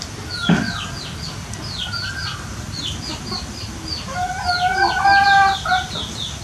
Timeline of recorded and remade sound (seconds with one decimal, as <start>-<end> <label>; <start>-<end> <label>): 0.0-6.4 recorded